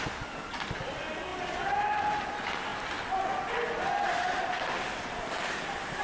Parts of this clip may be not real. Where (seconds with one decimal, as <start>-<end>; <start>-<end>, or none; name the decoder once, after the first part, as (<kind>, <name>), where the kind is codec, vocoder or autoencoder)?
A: 1.3-2.0 (vocoder, BigVGAN v2)

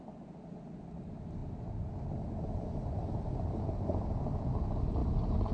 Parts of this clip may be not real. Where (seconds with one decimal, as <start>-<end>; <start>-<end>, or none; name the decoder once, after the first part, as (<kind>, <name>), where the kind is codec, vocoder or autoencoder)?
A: 5.0-5.5 (vocoder, BigVGAN v2)

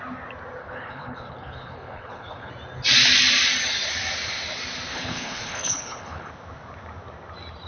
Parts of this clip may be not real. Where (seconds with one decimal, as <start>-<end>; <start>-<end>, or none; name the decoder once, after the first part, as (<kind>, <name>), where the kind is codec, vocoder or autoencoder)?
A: 0.6-2.5 (codec, HILCodec); 4.9-6.3

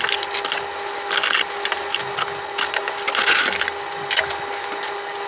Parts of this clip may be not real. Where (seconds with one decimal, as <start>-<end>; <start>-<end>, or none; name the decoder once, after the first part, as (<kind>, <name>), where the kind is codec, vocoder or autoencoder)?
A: none

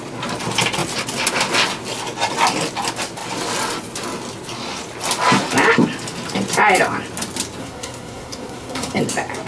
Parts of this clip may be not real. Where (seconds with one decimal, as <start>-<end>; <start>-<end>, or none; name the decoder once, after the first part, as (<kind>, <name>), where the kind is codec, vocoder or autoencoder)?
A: 7.6-9.0 (codec, SNAC)

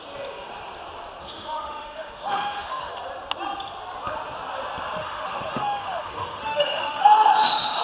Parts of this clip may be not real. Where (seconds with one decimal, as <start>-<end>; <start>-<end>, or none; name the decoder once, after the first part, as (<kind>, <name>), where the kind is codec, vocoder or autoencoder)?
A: 1.2-2.9 (autoencoder, DAC-VAE); 5.0-7.8

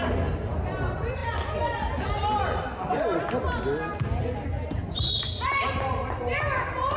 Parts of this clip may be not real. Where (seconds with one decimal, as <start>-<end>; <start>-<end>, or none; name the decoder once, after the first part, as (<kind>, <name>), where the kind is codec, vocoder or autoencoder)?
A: none

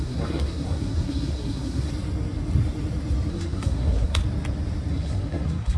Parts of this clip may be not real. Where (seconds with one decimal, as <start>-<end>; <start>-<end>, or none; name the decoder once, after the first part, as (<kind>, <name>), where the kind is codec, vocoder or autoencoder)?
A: 0.0-1.9 (codec, SNAC); 3.3-4.2; 4.9-5.8